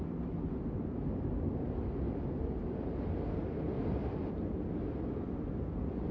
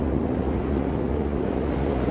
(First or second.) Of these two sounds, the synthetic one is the second